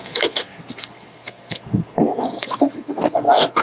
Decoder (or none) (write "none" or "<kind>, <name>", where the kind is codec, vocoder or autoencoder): codec, SNAC